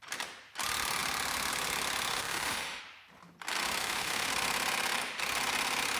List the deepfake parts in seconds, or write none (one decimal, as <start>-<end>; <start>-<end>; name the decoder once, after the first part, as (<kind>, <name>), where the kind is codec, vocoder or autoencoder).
2.1-2.8 (autoencoder, DAC-VAE); 3.8-4.3